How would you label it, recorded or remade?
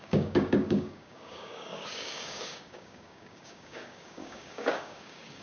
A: remade